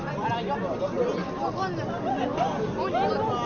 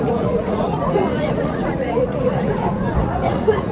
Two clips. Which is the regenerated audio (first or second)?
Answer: second